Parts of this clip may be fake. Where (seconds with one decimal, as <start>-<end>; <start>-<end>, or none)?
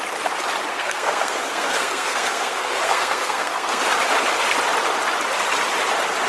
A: 0.7-3.8